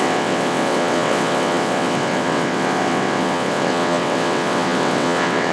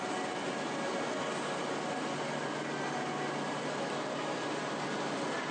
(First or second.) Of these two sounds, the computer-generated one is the first